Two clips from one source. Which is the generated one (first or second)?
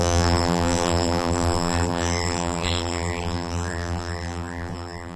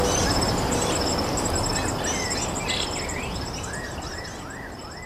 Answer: first